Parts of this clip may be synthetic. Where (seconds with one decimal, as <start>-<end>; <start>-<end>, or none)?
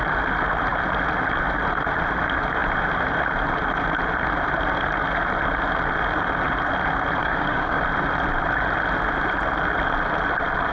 7.2-7.8